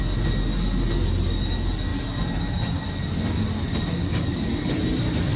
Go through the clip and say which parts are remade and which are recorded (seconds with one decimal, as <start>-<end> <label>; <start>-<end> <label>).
0.0-5.4 recorded